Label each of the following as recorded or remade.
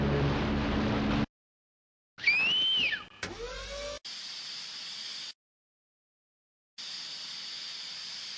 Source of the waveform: recorded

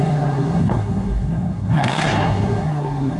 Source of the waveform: remade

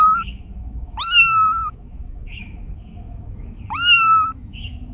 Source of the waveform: remade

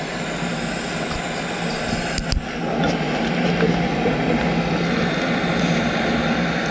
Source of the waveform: recorded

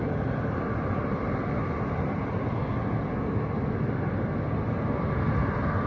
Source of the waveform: recorded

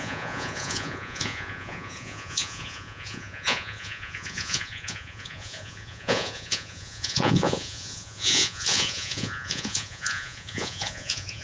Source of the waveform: remade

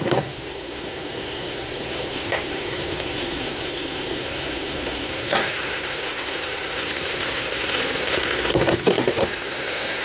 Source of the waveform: remade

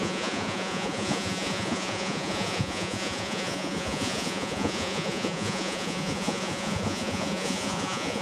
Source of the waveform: remade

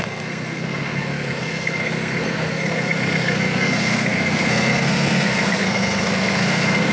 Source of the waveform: remade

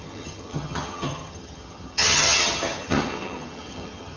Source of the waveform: remade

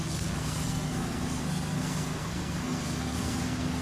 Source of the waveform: remade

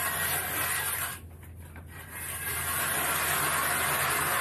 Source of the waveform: recorded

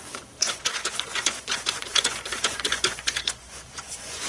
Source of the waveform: remade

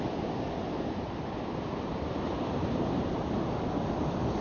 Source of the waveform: remade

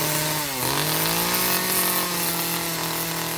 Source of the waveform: recorded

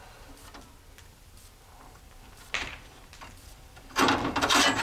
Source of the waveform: recorded